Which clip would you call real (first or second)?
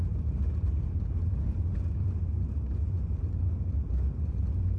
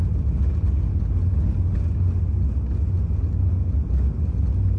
second